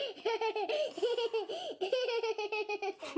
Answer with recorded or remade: recorded